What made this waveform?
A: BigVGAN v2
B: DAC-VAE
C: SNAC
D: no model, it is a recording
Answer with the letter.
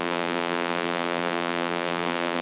A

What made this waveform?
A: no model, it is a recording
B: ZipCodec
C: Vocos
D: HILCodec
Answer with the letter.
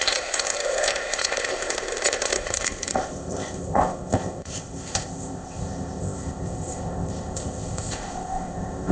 B